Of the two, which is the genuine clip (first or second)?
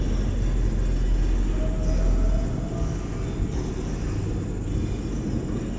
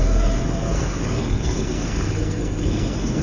first